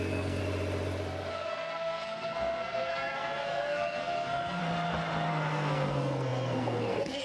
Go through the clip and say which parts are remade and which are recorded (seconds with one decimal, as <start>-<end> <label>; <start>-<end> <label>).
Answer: 0.0-0.4 remade; 0.4-1.3 recorded; 1.3-4.6 remade; 4.6-5.3 recorded; 5.3-7.2 remade